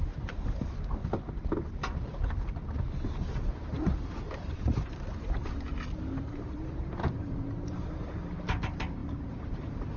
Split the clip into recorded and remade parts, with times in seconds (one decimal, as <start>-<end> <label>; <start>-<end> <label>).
0.0-1.0 remade; 1.0-4.3 recorded; 4.3-5.7 remade; 5.7-6.2 recorded; 6.2-10.0 remade